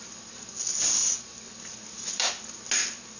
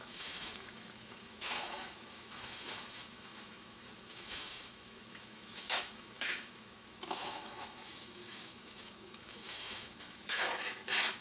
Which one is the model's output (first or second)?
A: second